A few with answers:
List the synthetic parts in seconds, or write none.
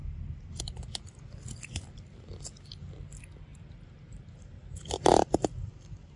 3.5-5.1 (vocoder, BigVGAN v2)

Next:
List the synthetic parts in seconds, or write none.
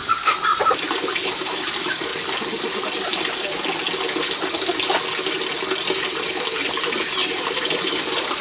0.5-1.6 (vocoder, BigVGAN v2); 7.2-8.4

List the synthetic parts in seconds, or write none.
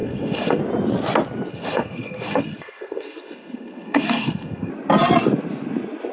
0.0-0.6 (codec, SNAC); 1.5-4.7